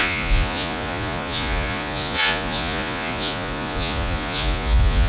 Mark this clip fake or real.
fake